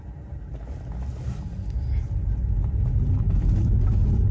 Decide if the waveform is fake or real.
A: real